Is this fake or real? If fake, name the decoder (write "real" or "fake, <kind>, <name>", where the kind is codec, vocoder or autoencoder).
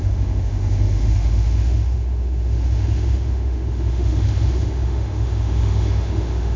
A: fake, autoencoder, DAC-VAE